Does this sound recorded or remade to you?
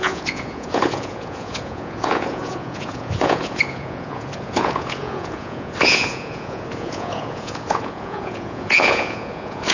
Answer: remade